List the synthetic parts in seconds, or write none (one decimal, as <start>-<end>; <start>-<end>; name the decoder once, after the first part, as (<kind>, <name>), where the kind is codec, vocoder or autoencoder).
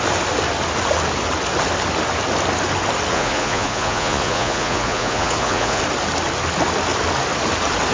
3.1-5.8 (vocoder, Vocos)